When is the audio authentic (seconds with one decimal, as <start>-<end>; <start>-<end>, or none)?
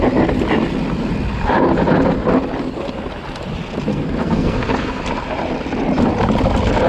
0.0-3.9; 5.0-6.9